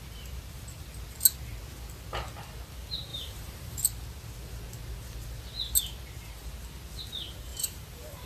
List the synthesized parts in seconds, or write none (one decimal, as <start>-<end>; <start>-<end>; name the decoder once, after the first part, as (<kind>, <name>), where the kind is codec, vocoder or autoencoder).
3.1-3.8 (vocoder, BigVGAN v2); 7.5-8.3